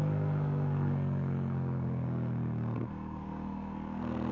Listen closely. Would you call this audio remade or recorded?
remade